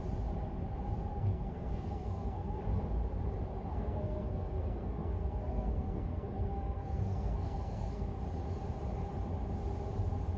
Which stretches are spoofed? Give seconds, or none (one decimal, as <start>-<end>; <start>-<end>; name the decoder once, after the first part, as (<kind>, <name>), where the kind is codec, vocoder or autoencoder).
1.1-2.6 (codec, SNAC); 3.7-8.2